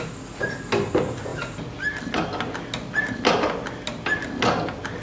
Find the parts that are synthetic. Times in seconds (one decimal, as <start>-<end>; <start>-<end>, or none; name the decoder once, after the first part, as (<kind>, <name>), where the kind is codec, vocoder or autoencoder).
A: none